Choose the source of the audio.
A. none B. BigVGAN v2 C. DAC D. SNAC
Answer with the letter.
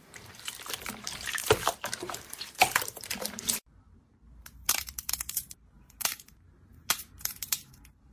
B